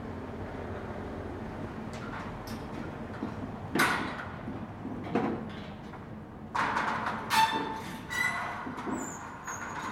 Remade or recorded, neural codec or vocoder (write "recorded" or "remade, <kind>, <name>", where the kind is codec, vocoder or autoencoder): recorded